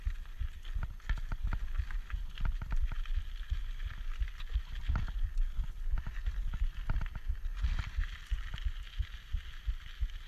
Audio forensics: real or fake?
real